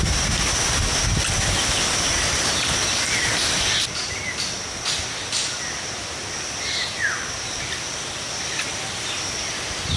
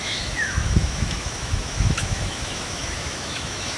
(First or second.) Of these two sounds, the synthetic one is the second